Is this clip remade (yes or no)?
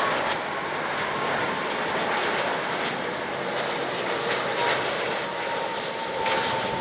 no